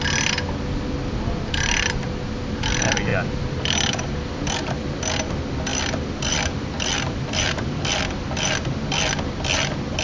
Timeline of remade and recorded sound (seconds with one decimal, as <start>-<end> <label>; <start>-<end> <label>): 0.0-3.1 recorded; 3.1-5.0 remade; 5.0-5.7 recorded; 5.7-8.3 remade; 8.3-10.0 recorded